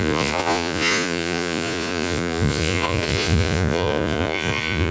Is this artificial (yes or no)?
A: yes